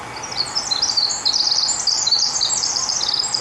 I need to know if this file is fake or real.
real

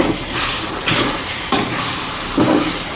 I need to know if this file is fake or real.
fake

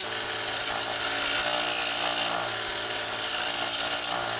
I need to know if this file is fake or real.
real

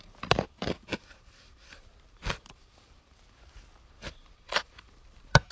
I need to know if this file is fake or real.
fake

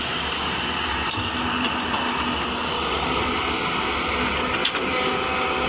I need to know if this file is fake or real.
real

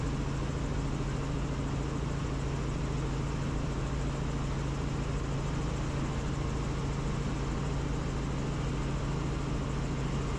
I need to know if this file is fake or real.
real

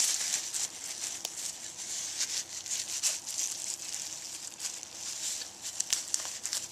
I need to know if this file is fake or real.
real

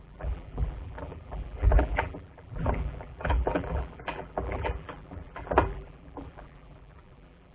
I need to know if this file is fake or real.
fake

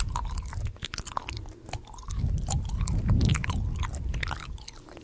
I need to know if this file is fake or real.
real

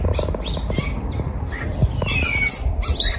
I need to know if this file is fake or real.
real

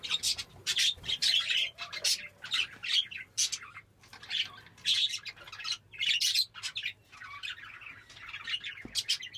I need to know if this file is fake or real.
real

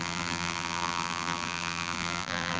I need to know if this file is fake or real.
fake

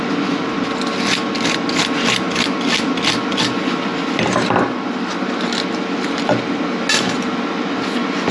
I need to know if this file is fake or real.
real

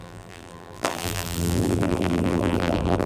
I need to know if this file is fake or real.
fake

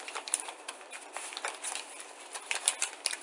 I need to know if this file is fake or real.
fake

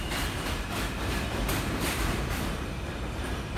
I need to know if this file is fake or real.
fake